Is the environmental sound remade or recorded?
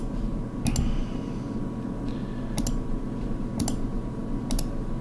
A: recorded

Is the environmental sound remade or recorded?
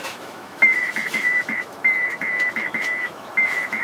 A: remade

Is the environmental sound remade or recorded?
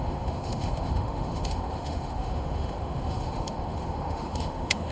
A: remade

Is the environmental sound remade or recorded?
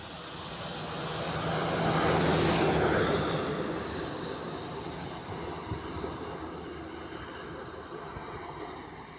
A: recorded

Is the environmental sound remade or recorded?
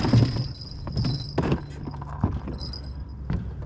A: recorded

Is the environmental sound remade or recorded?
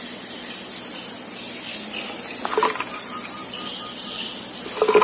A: recorded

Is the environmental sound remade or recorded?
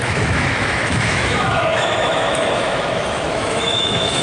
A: remade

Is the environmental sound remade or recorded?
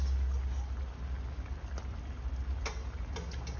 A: recorded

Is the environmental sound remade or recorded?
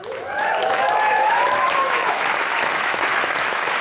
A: remade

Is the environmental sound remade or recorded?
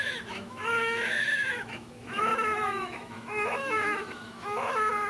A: remade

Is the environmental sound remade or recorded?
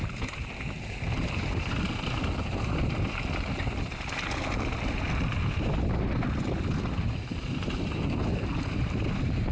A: recorded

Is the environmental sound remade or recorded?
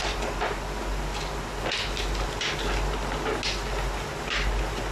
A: recorded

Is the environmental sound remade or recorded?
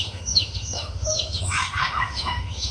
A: remade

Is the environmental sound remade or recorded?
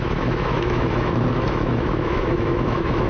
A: remade